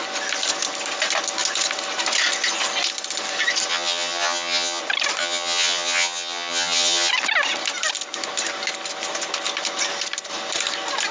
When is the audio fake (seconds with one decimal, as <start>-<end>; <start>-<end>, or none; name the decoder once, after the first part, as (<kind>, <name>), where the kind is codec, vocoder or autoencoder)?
3.7-4.8 (vocoder, HiFi-GAN); 5.2-7.1